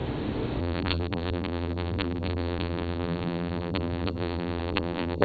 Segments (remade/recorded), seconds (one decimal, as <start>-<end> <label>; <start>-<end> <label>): 0.0-0.6 recorded; 0.6-5.2 remade